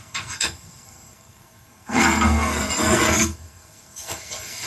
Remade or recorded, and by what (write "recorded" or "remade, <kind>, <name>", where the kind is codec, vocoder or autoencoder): remade, codec, SNAC